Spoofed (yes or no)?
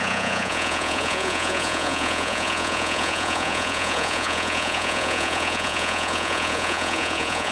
yes